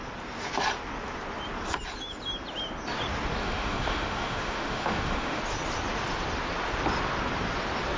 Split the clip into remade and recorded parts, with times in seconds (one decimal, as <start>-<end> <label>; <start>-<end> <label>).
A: 0.0-3.4 recorded; 3.4-5.4 remade; 5.4-8.0 recorded